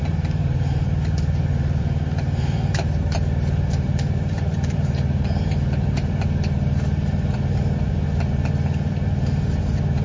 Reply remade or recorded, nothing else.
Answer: remade